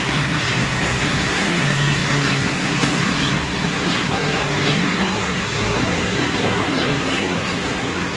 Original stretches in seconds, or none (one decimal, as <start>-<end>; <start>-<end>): none